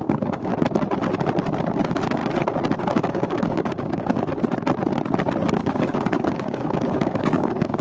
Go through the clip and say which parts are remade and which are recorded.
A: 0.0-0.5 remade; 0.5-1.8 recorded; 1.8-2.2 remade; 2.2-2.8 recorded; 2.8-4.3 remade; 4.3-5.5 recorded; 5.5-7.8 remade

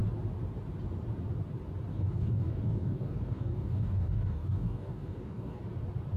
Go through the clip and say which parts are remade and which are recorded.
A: 0.0-1.9 recorded; 1.9-5.6 remade; 5.6-6.2 recorded

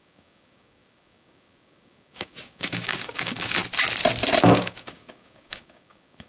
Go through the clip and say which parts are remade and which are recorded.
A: 0.0-3.6 remade; 3.6-4.4 recorded; 4.4-6.3 remade

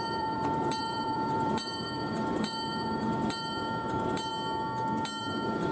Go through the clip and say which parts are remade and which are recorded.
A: 0.0-4.3 remade; 4.3-5.2 recorded; 5.2-5.7 remade

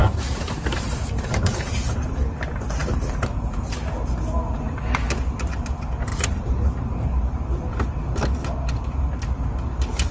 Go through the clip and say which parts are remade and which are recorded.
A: 0.0-2.4 remade; 2.4-2.8 recorded; 2.8-3.7 remade; 3.7-6.1 recorded; 6.1-7.4 remade; 7.4-10.1 recorded